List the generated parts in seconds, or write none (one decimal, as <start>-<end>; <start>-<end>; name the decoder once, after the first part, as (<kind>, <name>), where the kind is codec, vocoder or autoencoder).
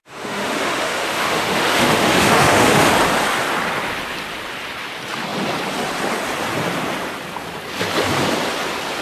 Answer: 0.0-2.9 (autoencoder, DAC-VAE)